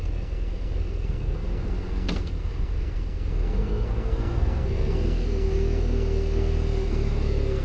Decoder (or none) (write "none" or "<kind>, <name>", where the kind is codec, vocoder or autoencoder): codec, SNAC